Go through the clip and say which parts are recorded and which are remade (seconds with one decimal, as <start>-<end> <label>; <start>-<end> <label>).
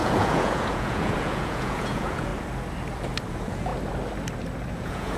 0.0-2.3 remade; 2.3-3.3 recorded; 3.3-3.7 remade; 3.7-4.7 recorded; 4.7-5.2 remade